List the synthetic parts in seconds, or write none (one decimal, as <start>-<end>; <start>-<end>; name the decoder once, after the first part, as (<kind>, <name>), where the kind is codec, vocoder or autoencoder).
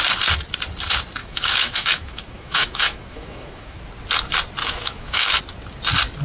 1.2-3.8 (autoencoder, DAC-VAE); 4.6-5.4